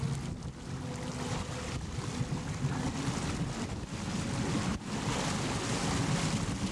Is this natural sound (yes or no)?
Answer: yes